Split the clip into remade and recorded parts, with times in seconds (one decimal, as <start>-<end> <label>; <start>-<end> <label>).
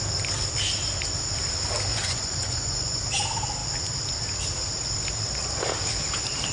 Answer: 0.0-1.9 recorded; 1.9-3.0 remade; 3.0-6.5 recorded